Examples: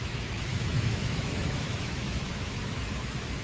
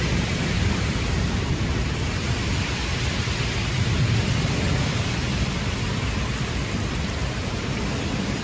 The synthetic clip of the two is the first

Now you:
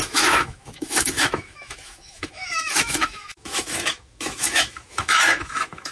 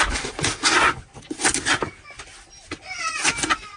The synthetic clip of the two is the first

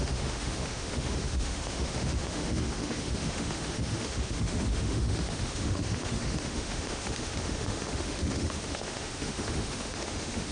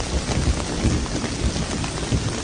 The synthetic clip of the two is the first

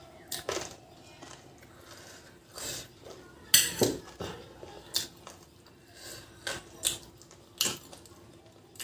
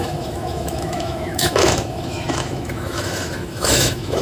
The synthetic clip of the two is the second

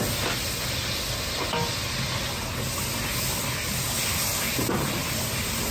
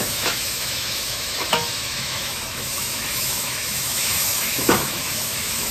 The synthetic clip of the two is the second